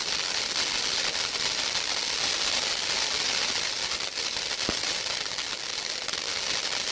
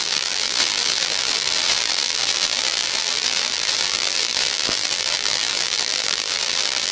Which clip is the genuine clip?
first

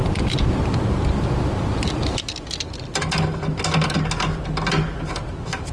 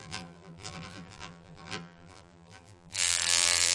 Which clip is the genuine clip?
first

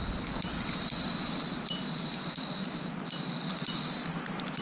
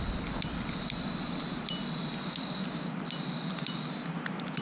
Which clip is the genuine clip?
second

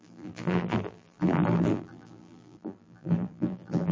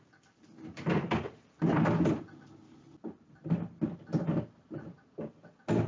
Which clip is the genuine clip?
second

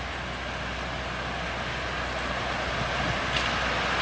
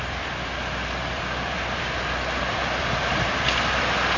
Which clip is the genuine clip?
first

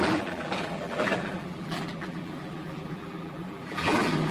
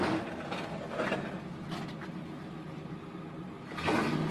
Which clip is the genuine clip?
second